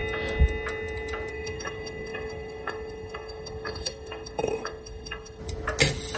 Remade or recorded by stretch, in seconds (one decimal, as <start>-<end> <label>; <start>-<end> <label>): 0.0-1.3 recorded; 1.3-5.4 remade; 5.4-6.2 recorded